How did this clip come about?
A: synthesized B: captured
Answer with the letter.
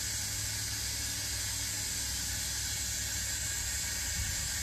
B